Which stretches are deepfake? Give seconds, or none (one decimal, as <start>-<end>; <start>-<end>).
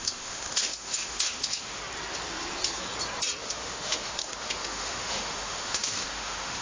0.0-1.8; 3.4-6.6